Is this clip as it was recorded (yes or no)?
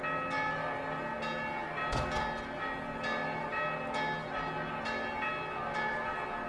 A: yes